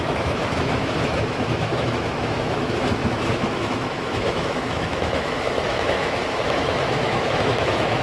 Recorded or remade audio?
remade